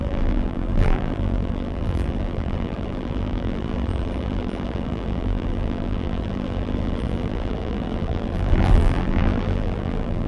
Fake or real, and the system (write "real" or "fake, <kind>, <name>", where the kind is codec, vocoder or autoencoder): fake, vocoder, BigVGAN v2